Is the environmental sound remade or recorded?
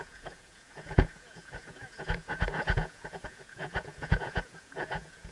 remade